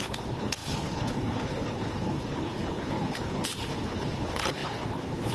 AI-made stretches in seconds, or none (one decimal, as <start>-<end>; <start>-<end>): 0.0-5.3